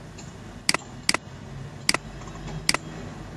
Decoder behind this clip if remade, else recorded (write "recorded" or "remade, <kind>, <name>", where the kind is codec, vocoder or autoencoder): recorded